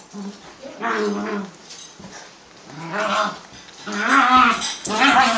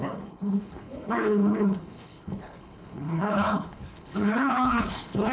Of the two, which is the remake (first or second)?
second